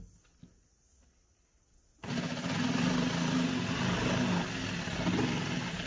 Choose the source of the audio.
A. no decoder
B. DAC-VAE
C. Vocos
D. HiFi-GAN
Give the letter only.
A